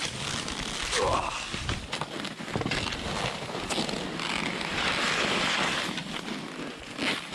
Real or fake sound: real